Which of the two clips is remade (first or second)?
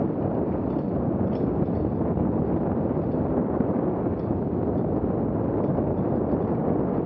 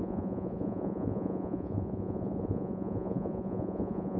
second